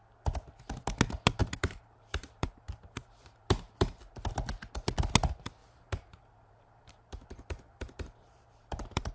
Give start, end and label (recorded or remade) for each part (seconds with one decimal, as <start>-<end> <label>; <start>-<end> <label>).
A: 0.0-1.4 recorded; 1.4-4.0 remade; 4.0-5.6 recorded; 5.6-9.1 remade